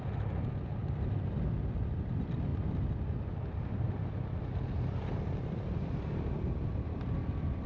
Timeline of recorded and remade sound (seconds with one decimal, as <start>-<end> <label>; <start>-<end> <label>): 0.0-7.7 recorded